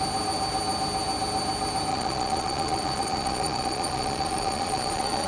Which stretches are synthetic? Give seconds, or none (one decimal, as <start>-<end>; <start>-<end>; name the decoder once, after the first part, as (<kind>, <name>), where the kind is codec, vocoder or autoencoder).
1.9-5.3 (vocoder, Vocos)